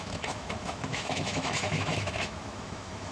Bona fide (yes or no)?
no